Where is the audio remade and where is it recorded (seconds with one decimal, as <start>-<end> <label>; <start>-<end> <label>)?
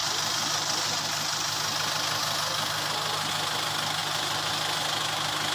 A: 0.0-4.0 recorded; 4.0-4.5 remade; 4.5-5.5 recorded